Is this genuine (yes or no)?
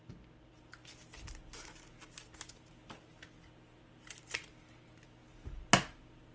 yes